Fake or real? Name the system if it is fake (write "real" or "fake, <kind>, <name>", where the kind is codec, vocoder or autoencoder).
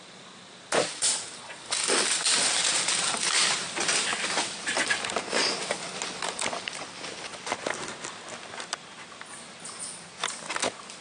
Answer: real